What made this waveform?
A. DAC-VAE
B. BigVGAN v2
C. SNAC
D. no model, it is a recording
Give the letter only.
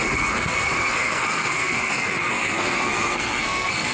C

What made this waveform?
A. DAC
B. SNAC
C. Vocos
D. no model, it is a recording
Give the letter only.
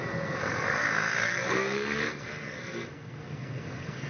B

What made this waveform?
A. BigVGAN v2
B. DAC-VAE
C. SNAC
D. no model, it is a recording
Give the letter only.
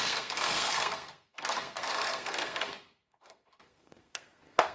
C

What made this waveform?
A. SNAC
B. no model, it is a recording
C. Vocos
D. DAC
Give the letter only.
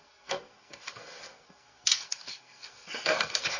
A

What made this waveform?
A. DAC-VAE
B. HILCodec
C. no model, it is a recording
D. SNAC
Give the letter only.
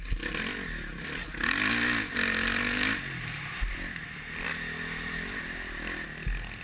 C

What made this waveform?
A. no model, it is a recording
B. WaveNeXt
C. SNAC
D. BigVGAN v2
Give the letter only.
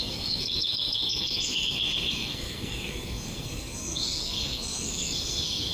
C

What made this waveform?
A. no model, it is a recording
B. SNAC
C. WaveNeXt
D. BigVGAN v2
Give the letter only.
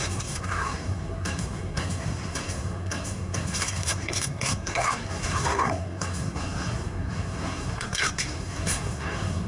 B